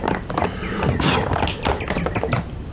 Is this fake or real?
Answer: real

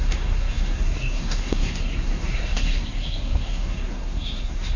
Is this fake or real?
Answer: fake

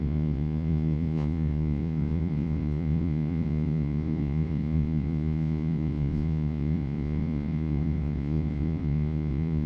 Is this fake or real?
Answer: fake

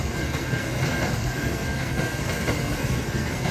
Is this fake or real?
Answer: fake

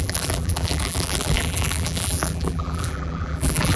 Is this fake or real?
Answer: fake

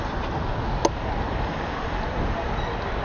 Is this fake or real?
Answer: real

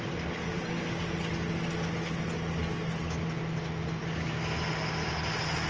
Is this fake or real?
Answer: real